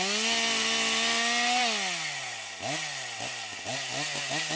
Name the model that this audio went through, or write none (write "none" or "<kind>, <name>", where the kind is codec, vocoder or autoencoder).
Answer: none